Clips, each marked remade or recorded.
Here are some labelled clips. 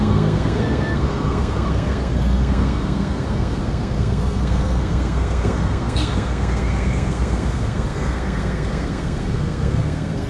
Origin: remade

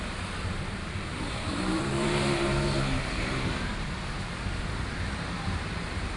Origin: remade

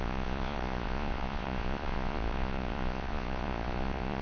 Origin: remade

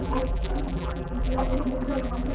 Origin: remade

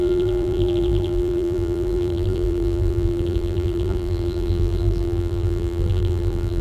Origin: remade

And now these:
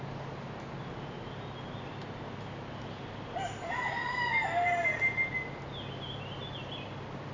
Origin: recorded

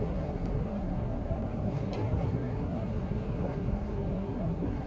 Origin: remade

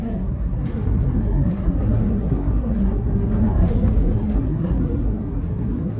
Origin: remade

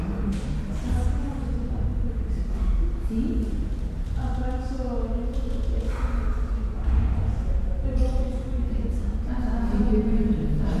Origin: recorded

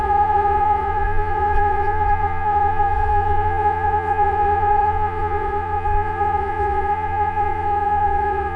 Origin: remade